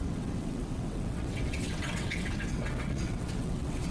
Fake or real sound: fake